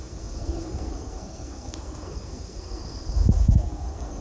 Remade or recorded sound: remade